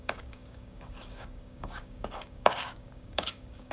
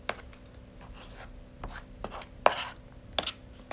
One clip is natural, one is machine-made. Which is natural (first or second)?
second